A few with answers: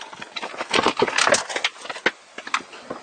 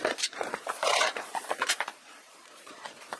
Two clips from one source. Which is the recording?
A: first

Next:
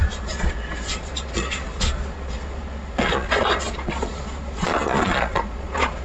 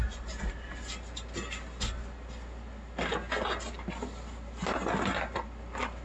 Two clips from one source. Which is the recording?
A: second